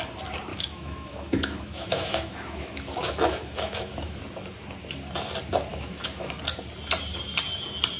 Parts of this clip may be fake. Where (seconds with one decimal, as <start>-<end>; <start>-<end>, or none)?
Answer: 0.5-4.2; 5.7-6.4